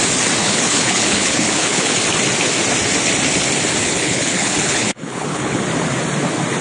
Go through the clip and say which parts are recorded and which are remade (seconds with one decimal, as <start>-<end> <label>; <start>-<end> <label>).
0.0-0.4 recorded; 0.4-2.0 remade; 2.0-3.8 recorded; 3.8-5.6 remade; 5.6-6.6 recorded